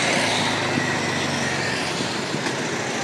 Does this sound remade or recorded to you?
recorded